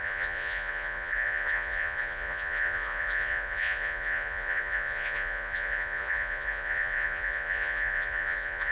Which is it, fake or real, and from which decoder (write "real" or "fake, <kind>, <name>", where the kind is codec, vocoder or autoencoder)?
fake, vocoder, Vocos